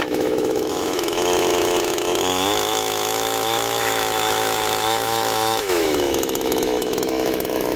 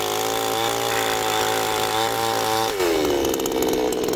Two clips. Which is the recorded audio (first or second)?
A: second